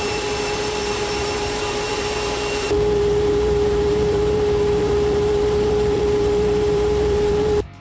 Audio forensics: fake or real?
fake